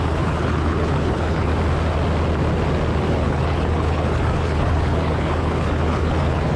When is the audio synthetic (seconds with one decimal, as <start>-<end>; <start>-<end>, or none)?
0.0-1.5; 3.1-6.6